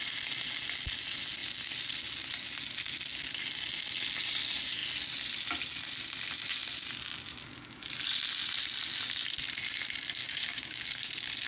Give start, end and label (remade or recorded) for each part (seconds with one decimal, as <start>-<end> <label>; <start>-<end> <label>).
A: 0.0-10.2 recorded; 10.2-11.1 remade; 11.1-11.5 recorded

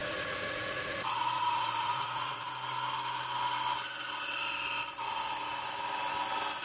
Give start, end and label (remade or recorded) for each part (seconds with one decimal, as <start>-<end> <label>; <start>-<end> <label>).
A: 0.0-2.5 remade; 2.5-6.6 recorded

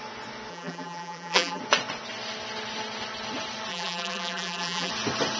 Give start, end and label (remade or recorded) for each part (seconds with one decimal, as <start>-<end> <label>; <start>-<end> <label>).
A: 0.0-0.5 recorded; 0.5-1.6 remade; 1.6-3.7 recorded; 3.7-4.9 remade; 4.9-5.4 recorded

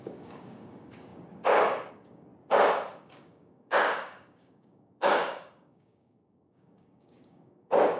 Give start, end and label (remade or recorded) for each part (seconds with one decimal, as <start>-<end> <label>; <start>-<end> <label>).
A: 0.0-2.3 remade; 2.3-3.0 recorded; 3.0-8.0 remade

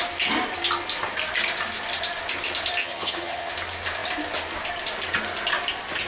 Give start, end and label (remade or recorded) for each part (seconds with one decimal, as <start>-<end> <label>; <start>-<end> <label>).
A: 0.0-2.8 recorded; 2.8-3.5 remade; 3.5-6.1 recorded